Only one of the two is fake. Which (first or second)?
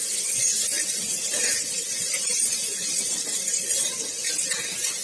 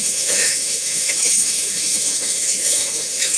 second